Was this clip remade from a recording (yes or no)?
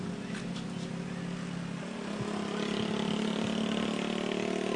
no